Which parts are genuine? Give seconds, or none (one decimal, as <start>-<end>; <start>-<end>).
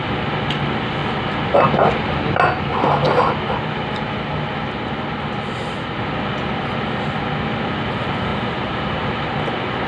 0.0-8.3; 9.0-9.9